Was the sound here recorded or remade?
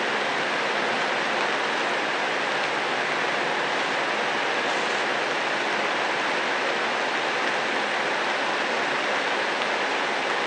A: recorded